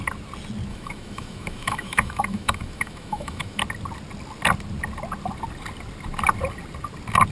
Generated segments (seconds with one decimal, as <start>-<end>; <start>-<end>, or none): 0.7-3.6